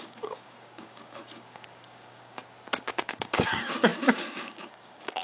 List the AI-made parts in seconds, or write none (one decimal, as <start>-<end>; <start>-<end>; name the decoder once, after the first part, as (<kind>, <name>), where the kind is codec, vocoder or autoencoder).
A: 0.0-2.4 (codec, DAC); 3.0-5.2